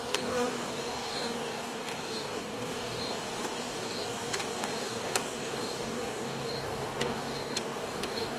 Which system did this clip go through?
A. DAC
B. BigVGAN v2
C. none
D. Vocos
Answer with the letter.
A